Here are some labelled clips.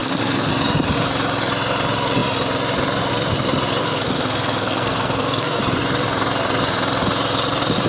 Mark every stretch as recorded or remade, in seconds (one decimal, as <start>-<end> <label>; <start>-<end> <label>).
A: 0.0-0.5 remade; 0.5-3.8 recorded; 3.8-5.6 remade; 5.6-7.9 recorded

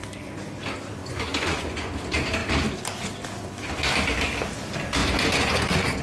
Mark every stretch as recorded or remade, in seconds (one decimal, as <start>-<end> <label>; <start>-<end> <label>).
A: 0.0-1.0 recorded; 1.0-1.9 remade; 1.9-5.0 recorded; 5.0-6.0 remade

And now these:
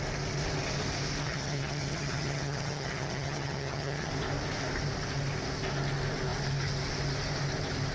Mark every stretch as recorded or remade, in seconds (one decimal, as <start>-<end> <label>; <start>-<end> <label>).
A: 0.0-1.2 recorded; 1.2-4.1 remade; 4.1-7.9 recorded

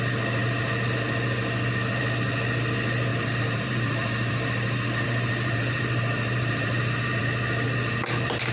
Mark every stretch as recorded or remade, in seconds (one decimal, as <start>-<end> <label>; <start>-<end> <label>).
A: 0.0-3.1 recorded; 3.1-7.2 remade; 7.2-8.5 recorded

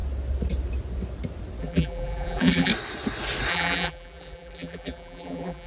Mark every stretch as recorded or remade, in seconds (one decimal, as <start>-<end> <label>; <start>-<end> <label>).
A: 0.0-1.6 recorded; 1.6-2.7 remade; 2.7-3.5 recorded; 3.5-5.7 remade

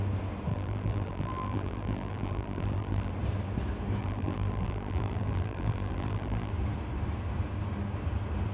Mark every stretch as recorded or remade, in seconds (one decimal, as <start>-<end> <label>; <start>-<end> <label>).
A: 0.0-0.5 recorded; 0.5-3.1 remade; 3.1-4.0 recorded; 4.0-6.5 remade; 6.5-8.5 recorded